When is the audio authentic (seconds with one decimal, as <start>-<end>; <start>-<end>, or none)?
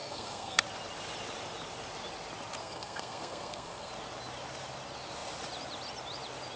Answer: 0.6-2.6; 3.9-6.6